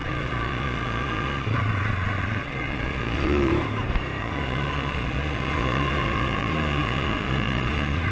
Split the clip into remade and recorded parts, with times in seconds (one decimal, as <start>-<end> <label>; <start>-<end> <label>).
0.0-3.5 remade; 3.5-4.2 recorded; 4.2-8.1 remade